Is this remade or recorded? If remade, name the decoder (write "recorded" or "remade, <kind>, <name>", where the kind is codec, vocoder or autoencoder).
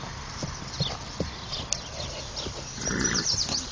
recorded